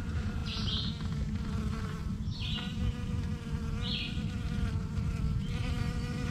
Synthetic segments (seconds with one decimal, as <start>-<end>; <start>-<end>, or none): 5.6-6.3